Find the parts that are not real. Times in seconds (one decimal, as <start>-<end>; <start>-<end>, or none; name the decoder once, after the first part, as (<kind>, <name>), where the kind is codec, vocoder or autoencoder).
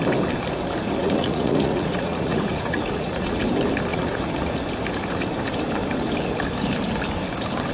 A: 1.0-3.4 (vocoder, Vocos); 3.9-4.6